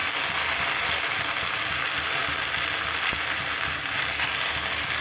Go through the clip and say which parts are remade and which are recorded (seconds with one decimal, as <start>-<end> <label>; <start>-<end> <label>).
0.0-5.0 recorded